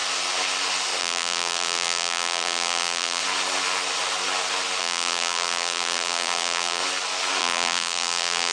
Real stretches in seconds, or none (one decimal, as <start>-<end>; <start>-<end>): 0.0-1.0; 3.2-4.8; 6.8-7.4